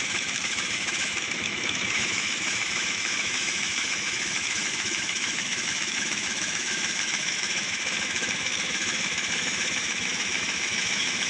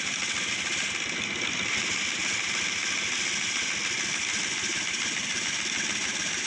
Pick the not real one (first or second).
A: first